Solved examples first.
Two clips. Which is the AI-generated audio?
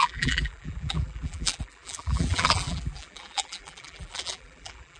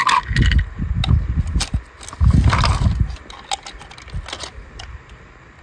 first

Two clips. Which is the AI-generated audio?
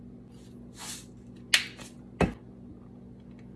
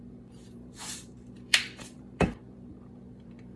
second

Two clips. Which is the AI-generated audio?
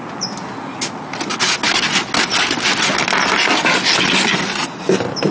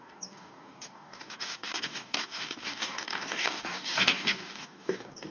second